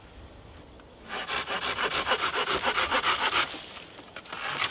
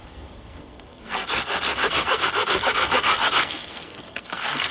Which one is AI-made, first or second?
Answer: second